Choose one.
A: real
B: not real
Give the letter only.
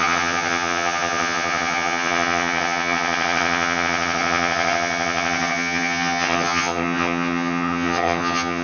B